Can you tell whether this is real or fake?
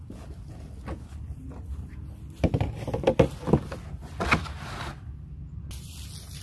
real